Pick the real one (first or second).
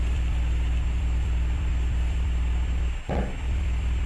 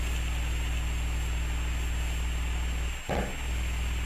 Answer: second